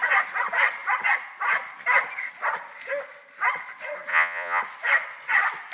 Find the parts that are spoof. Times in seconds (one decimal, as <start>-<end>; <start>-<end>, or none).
4.1-4.6